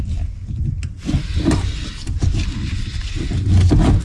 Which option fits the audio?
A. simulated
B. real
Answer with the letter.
B